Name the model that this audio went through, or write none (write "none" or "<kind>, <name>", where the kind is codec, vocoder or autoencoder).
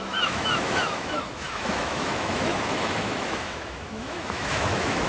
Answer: autoencoder, DAC-VAE